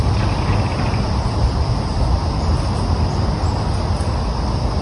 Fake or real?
real